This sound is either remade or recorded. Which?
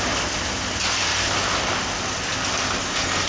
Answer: recorded